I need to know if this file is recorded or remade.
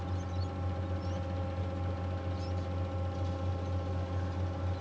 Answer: recorded